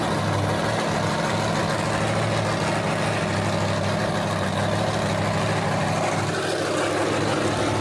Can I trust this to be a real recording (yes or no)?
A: yes